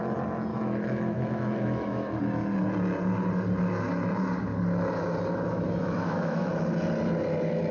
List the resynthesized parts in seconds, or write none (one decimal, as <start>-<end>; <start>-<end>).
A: 0.5-2.2; 5.5-6.5